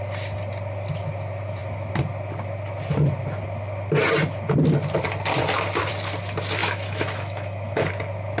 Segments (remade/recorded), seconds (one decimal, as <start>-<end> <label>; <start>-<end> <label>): 0.0-6.6 recorded; 6.6-7.9 remade; 7.9-8.4 recorded